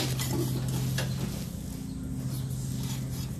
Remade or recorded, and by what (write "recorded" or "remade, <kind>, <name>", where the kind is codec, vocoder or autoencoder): recorded